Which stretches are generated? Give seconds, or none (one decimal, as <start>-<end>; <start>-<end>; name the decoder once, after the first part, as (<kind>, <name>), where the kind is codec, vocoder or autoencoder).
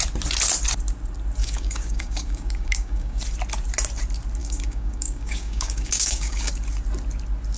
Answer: 1.4-3.2 (codec, DAC); 4.4-6.5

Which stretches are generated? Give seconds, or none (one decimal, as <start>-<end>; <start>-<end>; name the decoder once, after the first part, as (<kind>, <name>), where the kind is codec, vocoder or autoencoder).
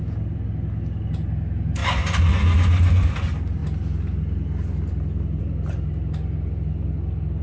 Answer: none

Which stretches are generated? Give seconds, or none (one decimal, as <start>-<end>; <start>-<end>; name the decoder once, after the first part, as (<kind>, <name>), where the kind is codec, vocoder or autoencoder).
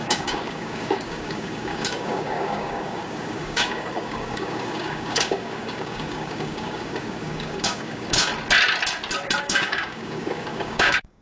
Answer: 0.0-8.3 (codec, DAC); 9.4-11.2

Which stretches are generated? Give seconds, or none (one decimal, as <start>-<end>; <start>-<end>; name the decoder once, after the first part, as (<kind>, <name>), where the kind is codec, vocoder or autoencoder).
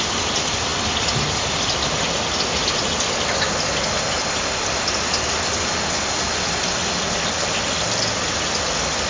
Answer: none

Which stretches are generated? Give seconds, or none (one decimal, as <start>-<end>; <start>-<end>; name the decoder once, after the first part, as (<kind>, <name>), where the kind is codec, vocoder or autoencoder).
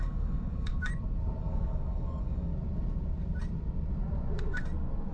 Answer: 0.0-0.7 (codec, DAC); 1.4-2.5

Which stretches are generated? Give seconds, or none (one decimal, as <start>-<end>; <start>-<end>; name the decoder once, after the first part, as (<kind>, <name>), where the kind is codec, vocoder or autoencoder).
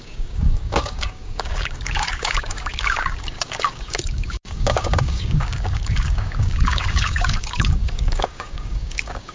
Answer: 0.0-9.3 (codec, DAC)